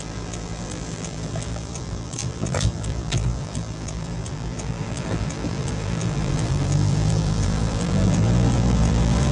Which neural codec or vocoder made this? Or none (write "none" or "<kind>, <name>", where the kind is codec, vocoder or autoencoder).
vocoder, BigVGAN v2